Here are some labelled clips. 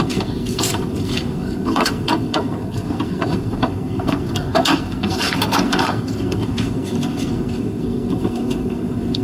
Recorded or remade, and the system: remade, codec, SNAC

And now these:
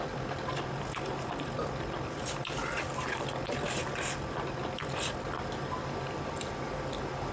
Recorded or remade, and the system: recorded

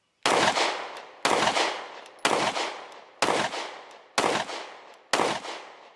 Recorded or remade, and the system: recorded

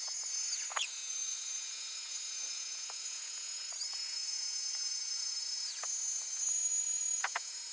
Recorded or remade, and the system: remade, vocoder, Vocos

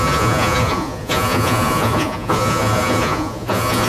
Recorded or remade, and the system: remade, vocoder, Vocos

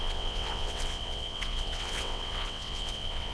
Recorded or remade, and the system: remade, vocoder, WaveNeXt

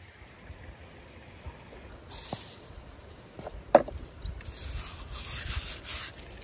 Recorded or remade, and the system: recorded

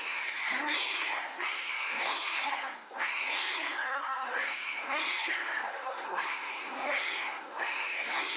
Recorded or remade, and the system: remade, codec, SNAC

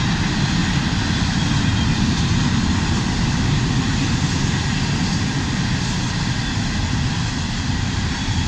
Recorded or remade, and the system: recorded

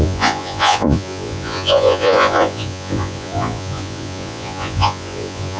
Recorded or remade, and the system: remade, vocoder, Vocos